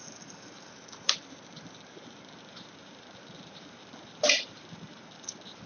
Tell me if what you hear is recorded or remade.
remade